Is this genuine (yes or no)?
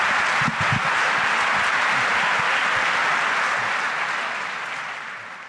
yes